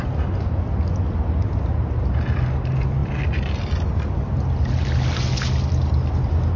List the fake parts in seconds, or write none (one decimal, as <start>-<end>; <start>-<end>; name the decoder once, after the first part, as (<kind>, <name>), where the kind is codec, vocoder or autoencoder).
none